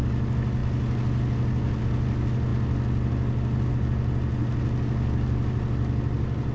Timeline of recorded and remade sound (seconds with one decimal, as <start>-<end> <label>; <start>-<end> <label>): 0.0-6.5 recorded